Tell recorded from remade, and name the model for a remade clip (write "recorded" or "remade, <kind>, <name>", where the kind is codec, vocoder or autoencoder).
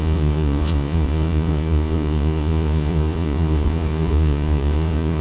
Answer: remade, vocoder, Vocos